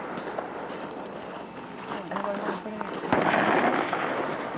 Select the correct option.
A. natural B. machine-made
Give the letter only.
A